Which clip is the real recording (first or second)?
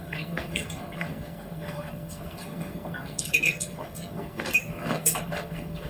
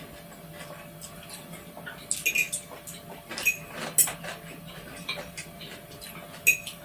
second